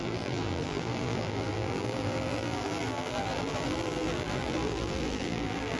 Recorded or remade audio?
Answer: remade